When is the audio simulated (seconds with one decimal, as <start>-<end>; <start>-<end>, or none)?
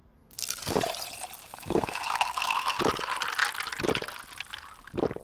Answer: 0.0-0.8; 1.4-2.8